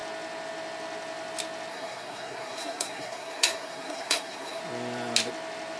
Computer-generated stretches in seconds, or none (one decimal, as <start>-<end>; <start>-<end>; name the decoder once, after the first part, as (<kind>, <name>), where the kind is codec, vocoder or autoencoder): 1.7-4.6 (codec, SNAC)